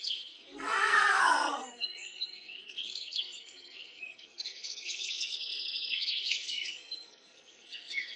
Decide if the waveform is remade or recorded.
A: remade